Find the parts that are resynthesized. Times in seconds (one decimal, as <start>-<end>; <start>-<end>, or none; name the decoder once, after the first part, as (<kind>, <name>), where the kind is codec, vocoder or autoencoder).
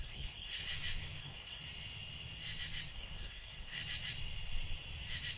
0.0-0.6 (codec, SNAC); 1.2-1.6; 2.9-3.8